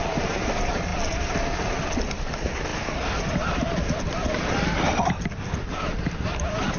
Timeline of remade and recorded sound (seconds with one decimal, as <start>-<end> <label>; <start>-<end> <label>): 0.0-6.8 recorded